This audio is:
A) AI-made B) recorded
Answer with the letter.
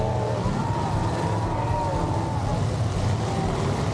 B